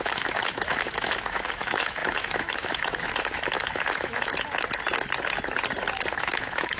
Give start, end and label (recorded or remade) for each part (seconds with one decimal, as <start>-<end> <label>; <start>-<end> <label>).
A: 0.0-4.3 remade; 4.3-6.1 recorded; 6.1-6.8 remade